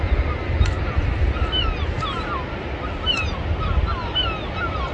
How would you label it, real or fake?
real